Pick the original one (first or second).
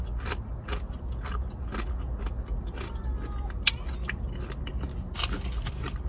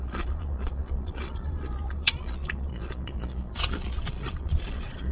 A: first